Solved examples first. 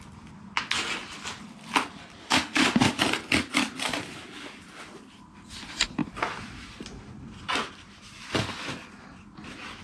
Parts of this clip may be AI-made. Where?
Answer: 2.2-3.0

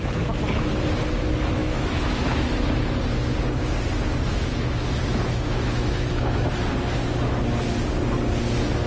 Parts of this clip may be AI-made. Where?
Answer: 1.6-2.4; 4.3-6.6

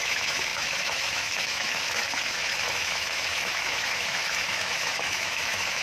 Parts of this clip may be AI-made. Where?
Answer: 0.0-5.8

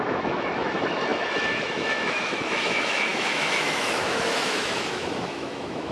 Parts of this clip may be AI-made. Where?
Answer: 0.0-5.9

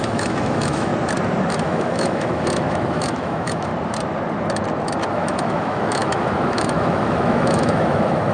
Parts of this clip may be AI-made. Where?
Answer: 0.0-0.9; 1.5-3.7; 5.1-8.3

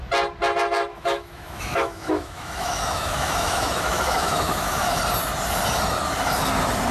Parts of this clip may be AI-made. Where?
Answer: 0.9-5.0

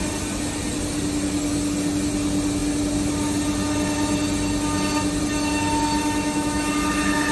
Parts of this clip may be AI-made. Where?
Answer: 6.0-6.7